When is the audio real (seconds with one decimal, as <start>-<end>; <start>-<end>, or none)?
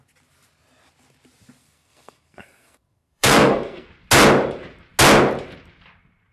0.0-1.6; 3.9-6.3